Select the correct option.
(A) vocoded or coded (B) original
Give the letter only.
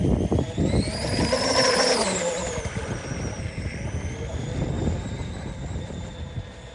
B